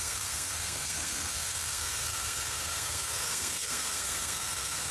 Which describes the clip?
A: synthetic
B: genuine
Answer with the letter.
A